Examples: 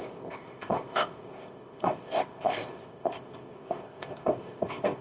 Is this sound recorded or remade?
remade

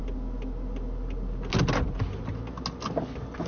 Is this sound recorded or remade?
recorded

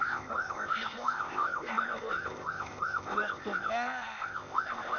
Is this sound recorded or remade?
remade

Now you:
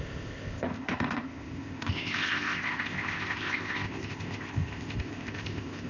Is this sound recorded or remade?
remade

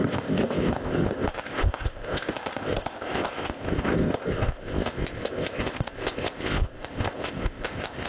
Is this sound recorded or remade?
remade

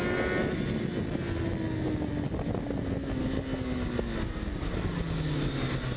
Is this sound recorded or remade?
recorded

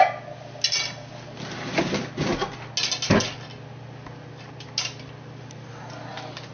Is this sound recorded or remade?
recorded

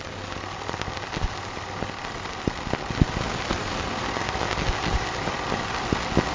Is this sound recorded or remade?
recorded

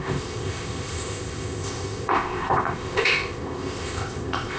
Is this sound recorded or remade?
remade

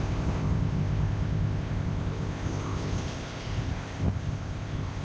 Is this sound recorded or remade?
remade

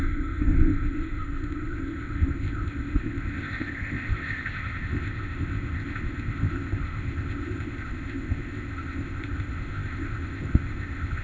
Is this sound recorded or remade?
remade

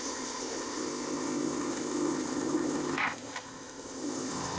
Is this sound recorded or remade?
remade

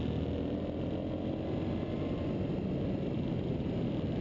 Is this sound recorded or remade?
recorded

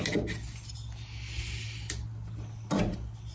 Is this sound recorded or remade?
recorded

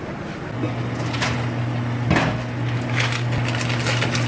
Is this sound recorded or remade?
recorded